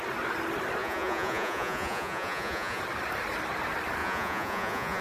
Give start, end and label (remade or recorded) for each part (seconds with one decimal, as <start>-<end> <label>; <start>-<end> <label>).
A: 0.0-0.8 recorded; 0.8-2.8 remade; 2.8-4.0 recorded; 4.0-5.0 remade